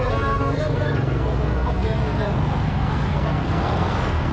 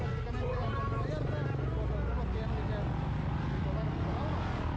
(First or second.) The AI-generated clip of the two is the first